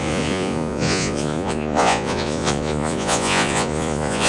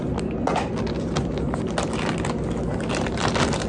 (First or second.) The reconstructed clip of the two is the first